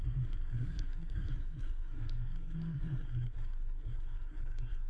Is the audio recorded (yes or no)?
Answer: no